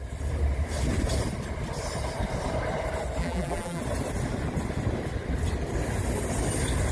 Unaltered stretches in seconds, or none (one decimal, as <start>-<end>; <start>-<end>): 0.0-3.2; 3.8-6.9